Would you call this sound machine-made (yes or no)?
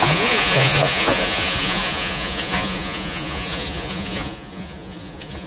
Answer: yes